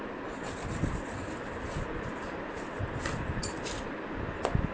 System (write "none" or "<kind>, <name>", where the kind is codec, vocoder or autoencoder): none